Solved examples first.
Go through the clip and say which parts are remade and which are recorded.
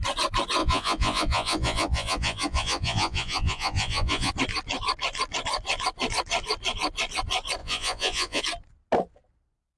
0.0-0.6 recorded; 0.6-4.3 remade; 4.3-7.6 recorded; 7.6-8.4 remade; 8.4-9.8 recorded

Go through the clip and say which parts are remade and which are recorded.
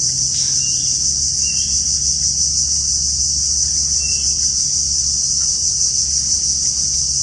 0.0-7.2 recorded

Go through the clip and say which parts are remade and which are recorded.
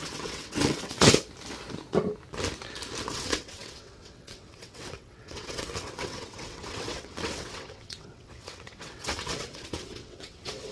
0.0-1.1 remade; 1.1-3.1 recorded; 3.1-10.7 remade